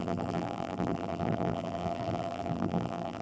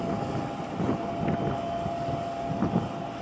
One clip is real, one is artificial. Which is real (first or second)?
second